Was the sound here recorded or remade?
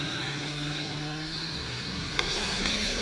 remade